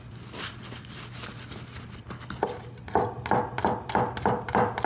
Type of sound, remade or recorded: recorded